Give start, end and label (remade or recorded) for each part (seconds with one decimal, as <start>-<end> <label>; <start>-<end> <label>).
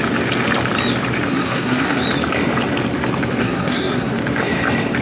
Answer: 0.0-1.3 recorded; 1.3-2.0 remade; 2.0-3.4 recorded; 3.4-4.1 remade; 4.1-5.0 recorded